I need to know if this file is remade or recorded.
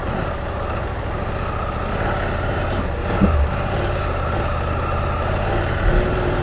recorded